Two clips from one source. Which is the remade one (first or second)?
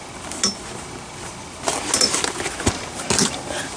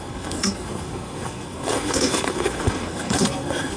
second